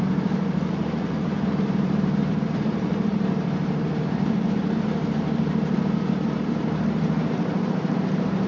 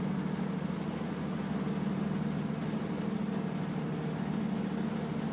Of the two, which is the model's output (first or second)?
first